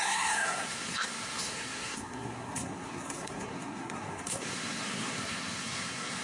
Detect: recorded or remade remade